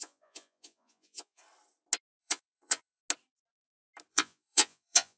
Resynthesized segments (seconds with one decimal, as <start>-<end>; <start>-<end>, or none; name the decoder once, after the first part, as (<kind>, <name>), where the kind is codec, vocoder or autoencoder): 0.0-1.4 (vocoder, Vocos); 2.2-3.0; 4.1-5.2